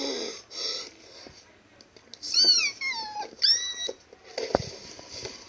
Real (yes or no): yes